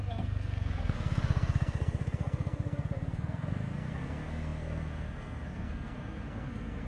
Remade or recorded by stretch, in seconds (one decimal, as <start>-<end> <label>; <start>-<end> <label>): 0.0-6.9 remade